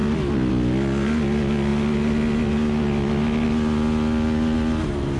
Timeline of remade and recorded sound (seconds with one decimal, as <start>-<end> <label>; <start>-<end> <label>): 0.0-5.2 recorded